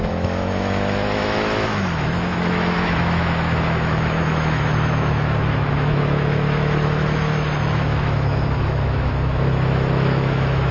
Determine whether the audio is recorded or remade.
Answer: remade